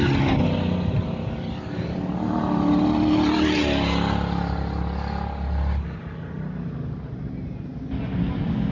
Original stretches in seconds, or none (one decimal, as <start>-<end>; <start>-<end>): 0.0-8.7